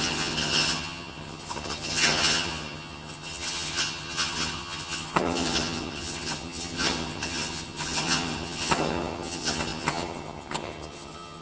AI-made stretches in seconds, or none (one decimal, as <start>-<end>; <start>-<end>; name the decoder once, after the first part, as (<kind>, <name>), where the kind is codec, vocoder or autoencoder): 0.0-11.4 (vocoder, HiFi-GAN)